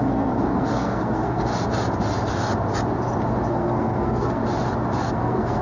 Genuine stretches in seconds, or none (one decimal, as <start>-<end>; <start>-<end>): 1.5-3.5; 4.4-5.0